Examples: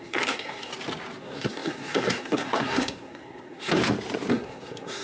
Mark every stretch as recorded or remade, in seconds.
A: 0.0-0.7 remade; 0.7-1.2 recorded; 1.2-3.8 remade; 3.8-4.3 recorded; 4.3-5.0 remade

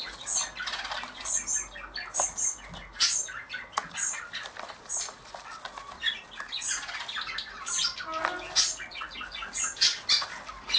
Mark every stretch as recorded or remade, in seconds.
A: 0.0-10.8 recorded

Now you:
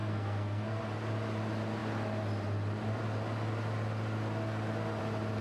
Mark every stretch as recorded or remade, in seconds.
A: 0.0-0.8 remade; 0.8-5.4 recorded